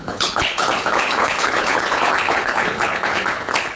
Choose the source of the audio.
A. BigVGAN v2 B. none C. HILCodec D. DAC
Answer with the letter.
C